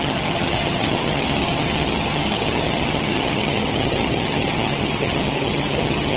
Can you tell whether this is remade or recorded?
remade